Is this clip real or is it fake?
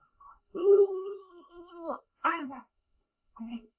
fake